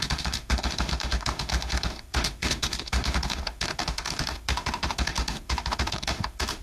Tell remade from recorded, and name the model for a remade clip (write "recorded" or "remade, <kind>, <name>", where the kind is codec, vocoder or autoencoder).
remade, autoencoder, DAC-VAE